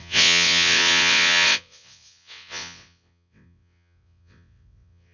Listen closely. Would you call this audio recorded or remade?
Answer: remade